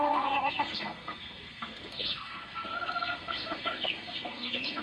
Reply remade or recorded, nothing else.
remade